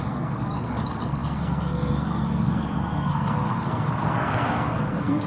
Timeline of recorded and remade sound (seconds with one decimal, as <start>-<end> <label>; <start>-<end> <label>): 0.0-5.3 remade

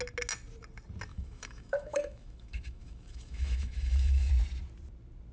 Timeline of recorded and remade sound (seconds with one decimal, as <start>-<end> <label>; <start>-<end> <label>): 0.0-1.1 recorded; 1.1-4.3 remade; 4.3-5.3 recorded